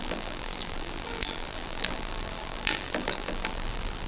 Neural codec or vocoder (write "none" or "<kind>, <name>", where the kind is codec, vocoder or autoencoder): vocoder, BigVGAN v2